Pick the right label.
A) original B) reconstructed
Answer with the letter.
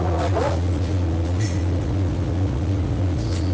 B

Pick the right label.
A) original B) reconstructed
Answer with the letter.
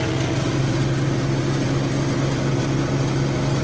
A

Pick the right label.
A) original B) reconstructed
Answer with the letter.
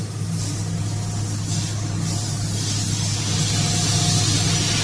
A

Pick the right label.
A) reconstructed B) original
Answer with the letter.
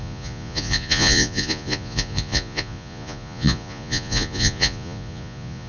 A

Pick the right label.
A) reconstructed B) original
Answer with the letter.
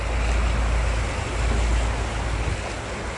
B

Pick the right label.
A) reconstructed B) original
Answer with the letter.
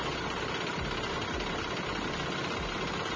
B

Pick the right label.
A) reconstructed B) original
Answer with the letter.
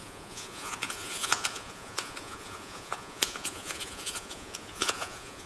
A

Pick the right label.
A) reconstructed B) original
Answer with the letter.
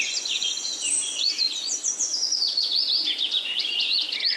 A